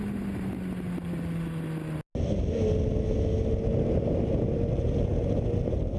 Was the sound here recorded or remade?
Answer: recorded